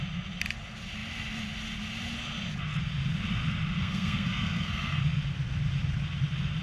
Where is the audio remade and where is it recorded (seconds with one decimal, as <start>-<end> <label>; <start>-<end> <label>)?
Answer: 0.0-3.8 recorded; 3.8-5.0 remade; 5.0-6.6 recorded